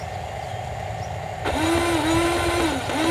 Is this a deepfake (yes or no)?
no